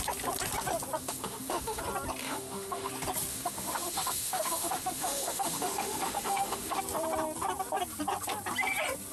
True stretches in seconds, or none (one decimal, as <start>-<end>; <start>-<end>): 0.0-1.0; 1.8-2.2; 2.9-3.3; 6.8-9.1